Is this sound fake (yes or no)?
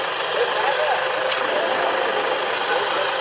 no